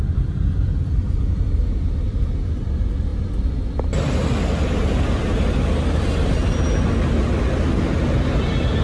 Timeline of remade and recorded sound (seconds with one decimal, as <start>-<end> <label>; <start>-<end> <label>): 0.0-8.8 recorded